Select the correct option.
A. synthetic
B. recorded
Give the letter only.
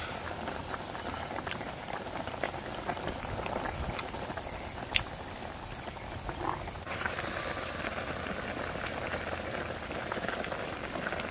B